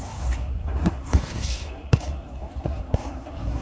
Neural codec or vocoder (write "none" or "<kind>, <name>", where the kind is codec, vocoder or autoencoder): codec, SNAC